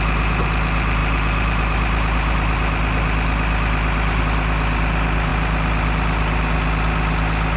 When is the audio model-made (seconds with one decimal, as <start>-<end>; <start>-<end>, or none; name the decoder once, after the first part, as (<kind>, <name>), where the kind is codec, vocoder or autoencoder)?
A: none